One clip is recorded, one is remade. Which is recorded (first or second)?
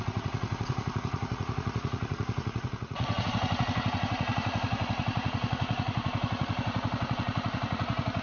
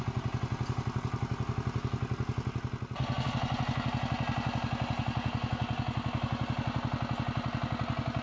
second